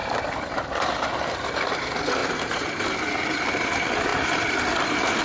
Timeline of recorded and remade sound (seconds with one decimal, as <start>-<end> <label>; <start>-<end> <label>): 0.0-1.7 remade; 1.7-2.2 recorded; 2.2-2.8 remade; 2.8-5.2 recorded

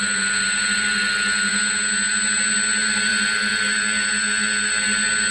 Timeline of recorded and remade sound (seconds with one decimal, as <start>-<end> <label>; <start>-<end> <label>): 0.0-5.3 recorded